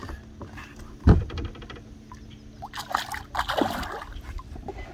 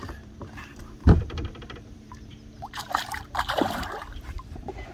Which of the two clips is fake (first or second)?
second